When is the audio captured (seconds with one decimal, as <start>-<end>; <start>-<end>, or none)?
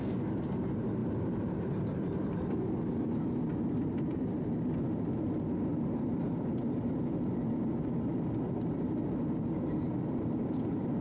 0.0-11.0